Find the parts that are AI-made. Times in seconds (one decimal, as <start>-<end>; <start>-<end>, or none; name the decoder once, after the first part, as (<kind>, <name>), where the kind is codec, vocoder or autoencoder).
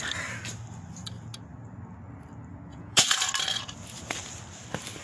2.7-3.3 (vocoder, Vocos)